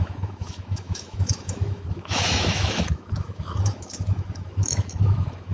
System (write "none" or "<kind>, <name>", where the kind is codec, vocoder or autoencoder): autoencoder, DAC-VAE